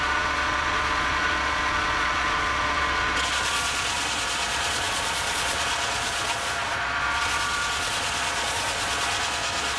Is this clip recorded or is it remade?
remade